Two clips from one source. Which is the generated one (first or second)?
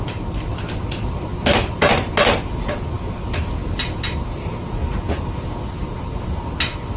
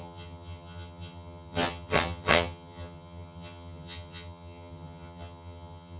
second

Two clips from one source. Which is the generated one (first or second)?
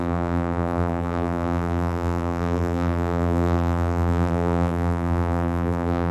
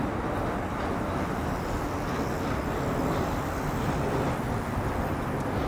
first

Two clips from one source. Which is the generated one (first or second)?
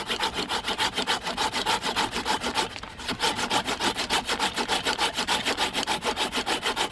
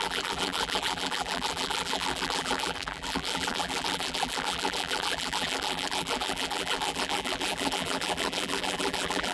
second